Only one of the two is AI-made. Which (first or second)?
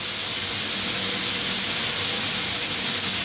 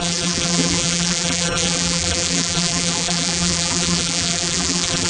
second